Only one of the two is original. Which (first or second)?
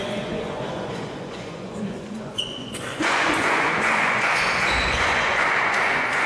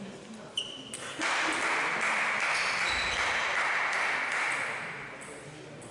second